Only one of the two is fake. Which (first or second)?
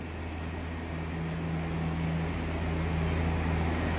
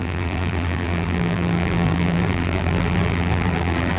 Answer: second